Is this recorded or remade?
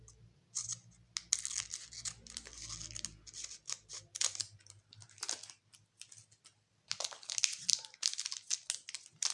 recorded